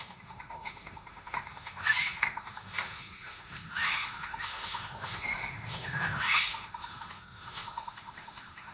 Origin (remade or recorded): remade